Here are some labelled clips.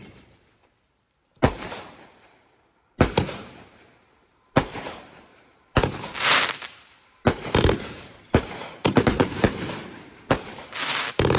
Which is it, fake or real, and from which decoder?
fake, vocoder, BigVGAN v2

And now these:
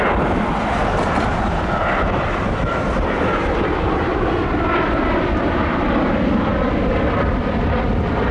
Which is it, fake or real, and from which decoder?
fake, vocoder, BigVGAN v2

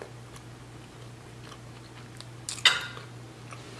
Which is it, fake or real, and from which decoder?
real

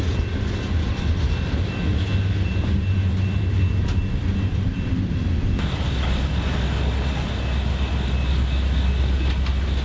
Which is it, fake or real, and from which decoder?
real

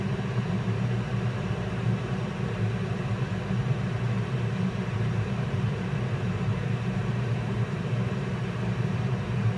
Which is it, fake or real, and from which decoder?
fake, vocoder, BigVGAN v2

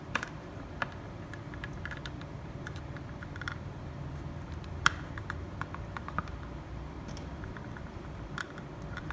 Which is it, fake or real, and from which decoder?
fake, vocoder, BigVGAN v2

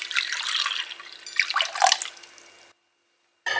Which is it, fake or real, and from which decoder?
real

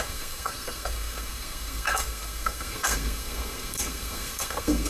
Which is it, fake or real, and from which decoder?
fake, codec, SNAC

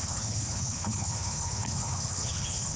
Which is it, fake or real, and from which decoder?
fake, codec, HILCodec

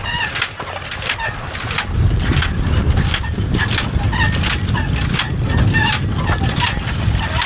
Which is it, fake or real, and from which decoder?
real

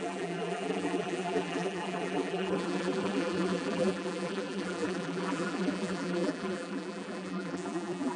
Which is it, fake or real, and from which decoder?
fake, vocoder, BigVGAN v2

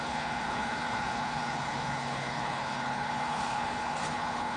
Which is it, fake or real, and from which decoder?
fake, codec, HILCodec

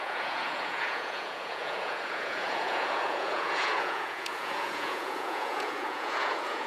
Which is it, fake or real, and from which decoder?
fake, vocoder, Vocos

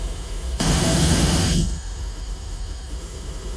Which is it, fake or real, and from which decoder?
fake, autoencoder, DAC-VAE